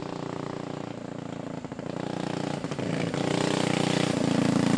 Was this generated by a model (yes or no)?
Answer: no